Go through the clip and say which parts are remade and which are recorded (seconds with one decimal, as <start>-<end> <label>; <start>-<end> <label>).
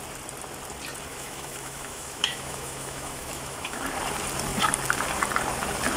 0.0-1.1 recorded; 1.1-3.8 remade; 3.8-6.0 recorded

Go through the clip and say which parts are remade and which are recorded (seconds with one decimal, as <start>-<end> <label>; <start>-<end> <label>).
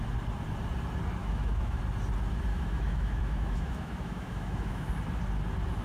0.0-1.2 recorded; 1.2-1.8 remade; 1.8-2.5 recorded; 2.5-4.9 remade; 4.9-5.8 recorded